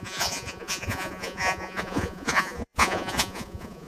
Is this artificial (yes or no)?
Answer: yes